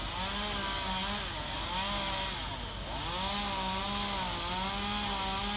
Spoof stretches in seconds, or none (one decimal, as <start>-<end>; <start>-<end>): none